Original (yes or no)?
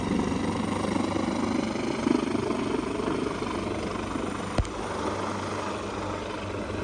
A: yes